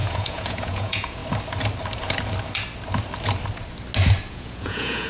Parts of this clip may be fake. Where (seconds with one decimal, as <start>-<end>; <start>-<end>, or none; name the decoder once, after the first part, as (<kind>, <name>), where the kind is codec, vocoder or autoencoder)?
0.0-1.2 (vocoder, Vocos); 4.3-5.1